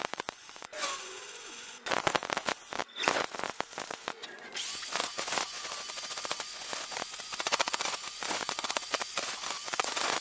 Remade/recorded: remade